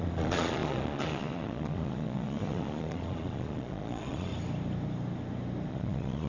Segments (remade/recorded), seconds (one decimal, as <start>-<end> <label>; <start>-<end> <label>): 0.0-4.3 remade; 4.3-5.7 recorded; 5.7-6.3 remade